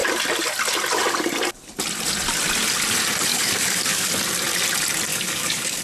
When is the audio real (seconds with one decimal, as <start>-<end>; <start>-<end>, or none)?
0.0-3.3; 4.1-5.1